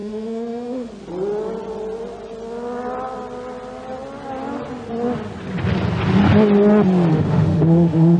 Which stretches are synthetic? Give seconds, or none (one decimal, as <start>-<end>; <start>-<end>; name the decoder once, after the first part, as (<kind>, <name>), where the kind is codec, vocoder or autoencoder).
0.0-0.9 (autoencoder, DAC-VAE); 7.1-8.2